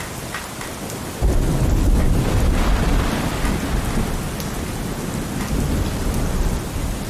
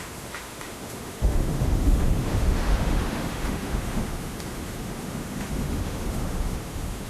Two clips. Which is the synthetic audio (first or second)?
second